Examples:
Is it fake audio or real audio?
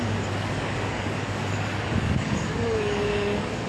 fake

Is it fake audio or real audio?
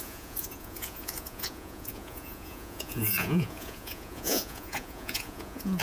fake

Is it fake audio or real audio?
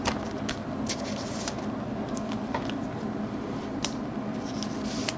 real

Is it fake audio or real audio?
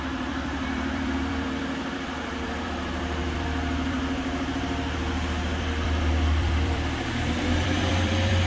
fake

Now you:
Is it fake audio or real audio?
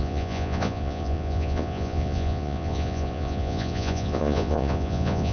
fake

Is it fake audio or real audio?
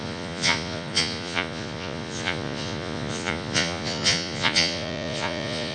fake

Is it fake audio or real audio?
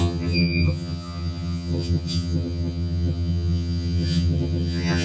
fake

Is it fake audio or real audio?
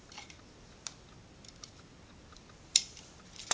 real